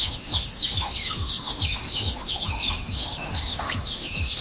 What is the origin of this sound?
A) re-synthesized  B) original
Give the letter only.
A